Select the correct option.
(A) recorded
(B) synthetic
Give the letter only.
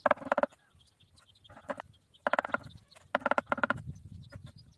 A